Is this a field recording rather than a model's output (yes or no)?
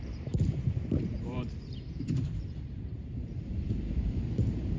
no